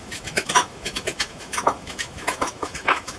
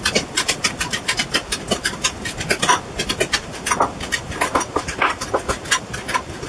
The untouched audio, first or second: second